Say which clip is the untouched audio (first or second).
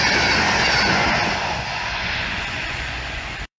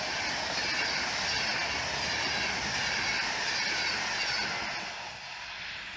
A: second